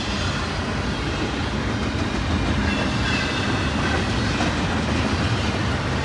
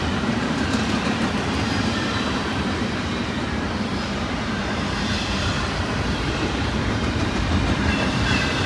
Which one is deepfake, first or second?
second